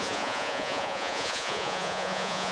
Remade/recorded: remade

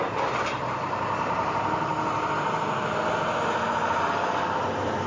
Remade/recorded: recorded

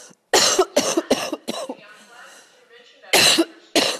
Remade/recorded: recorded